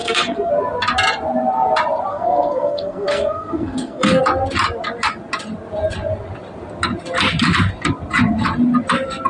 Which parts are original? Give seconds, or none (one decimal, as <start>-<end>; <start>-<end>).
0.5-2.1; 4.2-9.3